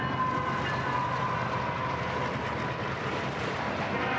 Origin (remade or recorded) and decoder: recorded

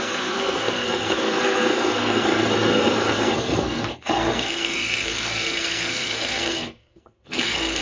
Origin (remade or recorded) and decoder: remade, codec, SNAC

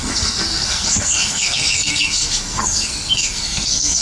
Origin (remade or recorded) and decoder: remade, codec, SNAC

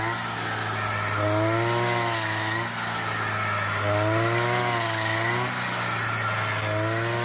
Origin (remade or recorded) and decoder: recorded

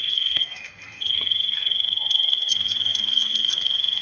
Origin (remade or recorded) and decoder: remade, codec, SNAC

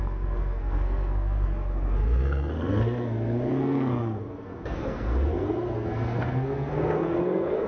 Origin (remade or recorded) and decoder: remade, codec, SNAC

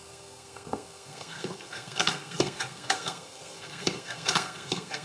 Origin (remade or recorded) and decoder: remade, codec, SNAC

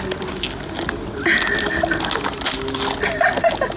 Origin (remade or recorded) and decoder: recorded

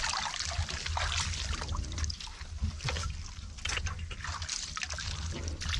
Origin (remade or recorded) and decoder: recorded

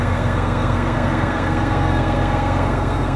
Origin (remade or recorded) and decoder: remade, codec, SNAC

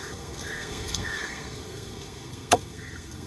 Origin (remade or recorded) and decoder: remade, codec, SNAC